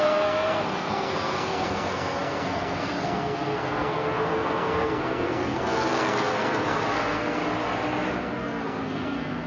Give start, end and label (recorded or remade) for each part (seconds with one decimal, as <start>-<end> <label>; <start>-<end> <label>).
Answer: 0.0-7.4 remade; 7.4-8.1 recorded; 8.1-9.5 remade